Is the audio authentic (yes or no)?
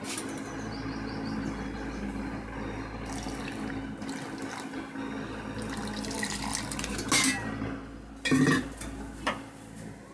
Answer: yes